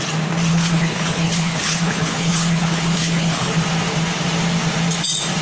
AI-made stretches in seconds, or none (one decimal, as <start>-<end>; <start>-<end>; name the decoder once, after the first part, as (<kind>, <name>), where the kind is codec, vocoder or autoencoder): 0.5-3.5 (codec, HILCodec)